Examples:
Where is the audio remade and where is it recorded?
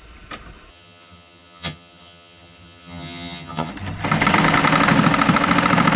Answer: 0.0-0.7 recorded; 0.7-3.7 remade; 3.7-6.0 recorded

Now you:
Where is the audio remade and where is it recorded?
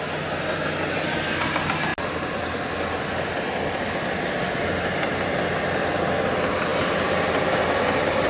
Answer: 0.0-8.3 recorded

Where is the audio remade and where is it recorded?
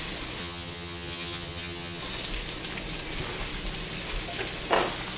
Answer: 0.0-0.4 recorded; 0.4-2.0 remade; 2.0-5.2 recorded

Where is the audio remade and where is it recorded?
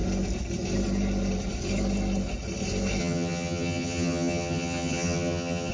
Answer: 0.0-3.0 recorded; 3.0-5.7 remade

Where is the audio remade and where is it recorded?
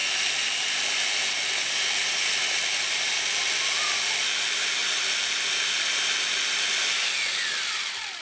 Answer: 0.0-8.2 recorded